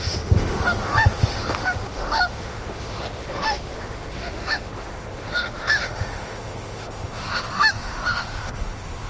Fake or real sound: fake